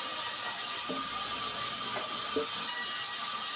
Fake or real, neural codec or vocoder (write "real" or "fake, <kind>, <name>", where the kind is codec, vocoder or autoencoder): real